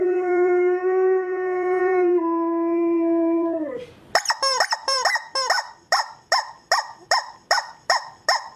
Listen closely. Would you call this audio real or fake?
fake